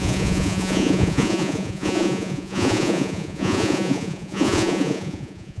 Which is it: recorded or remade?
remade